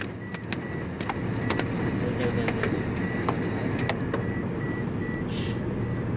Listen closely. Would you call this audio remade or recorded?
recorded